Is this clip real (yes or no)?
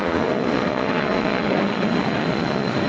no